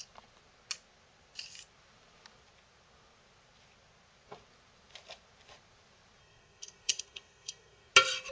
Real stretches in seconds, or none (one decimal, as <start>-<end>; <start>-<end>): 0.0-6.2; 7.9-8.3